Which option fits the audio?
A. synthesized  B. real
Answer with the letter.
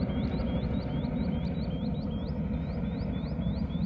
B